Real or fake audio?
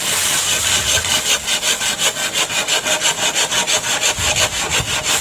real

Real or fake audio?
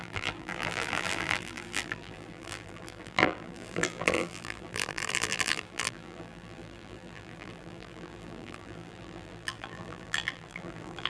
fake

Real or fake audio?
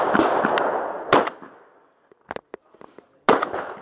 real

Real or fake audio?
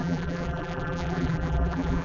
fake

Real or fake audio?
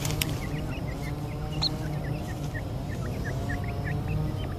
real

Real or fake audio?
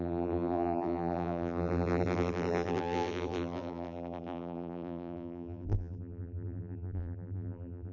fake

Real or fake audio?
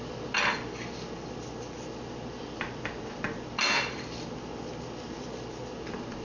real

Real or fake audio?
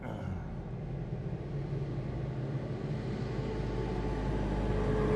real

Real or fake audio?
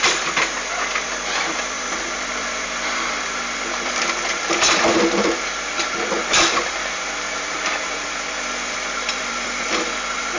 fake